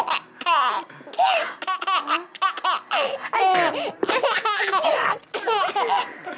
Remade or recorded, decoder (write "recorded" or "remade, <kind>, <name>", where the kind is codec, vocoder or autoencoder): recorded